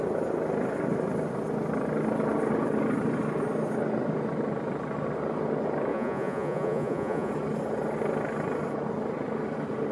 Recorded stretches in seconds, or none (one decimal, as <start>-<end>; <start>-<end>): 0.0-5.9; 7.3-9.9